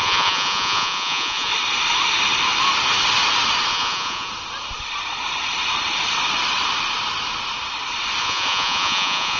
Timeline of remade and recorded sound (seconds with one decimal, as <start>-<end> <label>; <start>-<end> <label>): 0.0-1.5 remade; 1.5-3.7 recorded; 3.7-4.3 remade; 4.3-8.2 recorded; 8.2-9.4 remade